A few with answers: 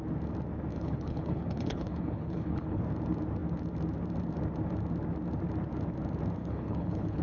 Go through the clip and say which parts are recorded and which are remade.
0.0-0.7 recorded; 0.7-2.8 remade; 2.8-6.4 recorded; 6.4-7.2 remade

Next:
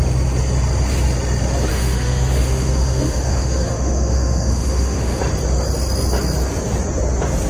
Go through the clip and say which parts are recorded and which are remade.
0.0-1.7 recorded; 1.7-5.2 remade; 5.2-7.5 recorded